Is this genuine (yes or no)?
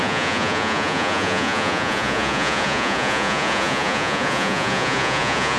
no